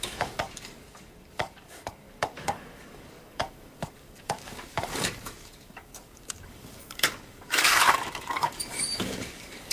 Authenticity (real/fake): fake